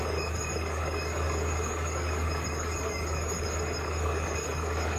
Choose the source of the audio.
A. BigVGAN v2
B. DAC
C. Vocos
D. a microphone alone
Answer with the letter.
B